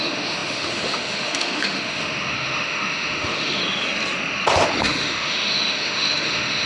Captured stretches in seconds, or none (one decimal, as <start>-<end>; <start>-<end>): 3.6-4.8